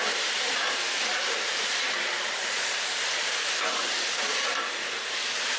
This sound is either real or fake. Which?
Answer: fake